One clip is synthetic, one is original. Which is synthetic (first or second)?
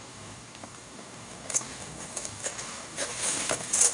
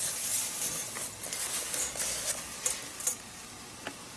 first